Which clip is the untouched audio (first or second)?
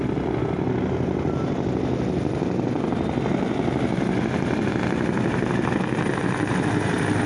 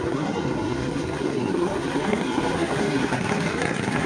first